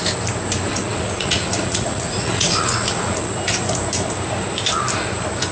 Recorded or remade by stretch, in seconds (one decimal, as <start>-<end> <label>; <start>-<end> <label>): 0.0-0.7 recorded; 0.7-3.3 remade; 3.3-5.5 recorded